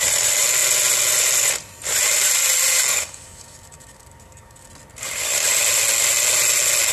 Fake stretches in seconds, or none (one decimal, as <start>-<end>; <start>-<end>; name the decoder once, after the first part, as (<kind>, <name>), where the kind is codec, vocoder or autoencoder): 2.9-4.7 (codec, DAC)